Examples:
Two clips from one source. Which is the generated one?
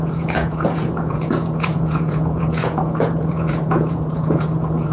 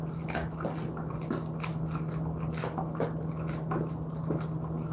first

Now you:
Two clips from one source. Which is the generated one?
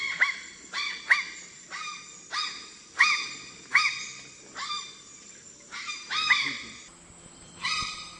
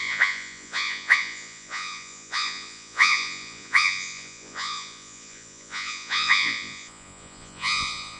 second